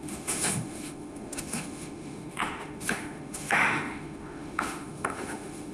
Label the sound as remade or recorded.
remade